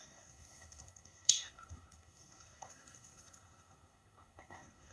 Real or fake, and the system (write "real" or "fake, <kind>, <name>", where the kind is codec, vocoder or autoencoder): fake, codec, SNAC